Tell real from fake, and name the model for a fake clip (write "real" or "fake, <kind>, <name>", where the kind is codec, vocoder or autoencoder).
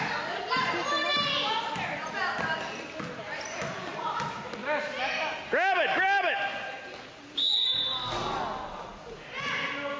real